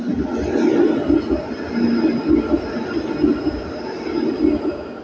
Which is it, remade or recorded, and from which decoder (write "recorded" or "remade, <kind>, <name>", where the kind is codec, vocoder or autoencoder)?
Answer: recorded